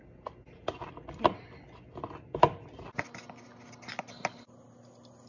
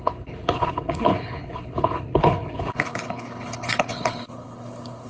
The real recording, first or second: first